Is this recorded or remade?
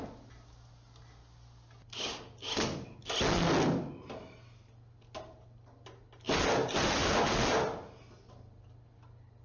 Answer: recorded